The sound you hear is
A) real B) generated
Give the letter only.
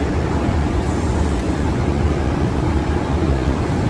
B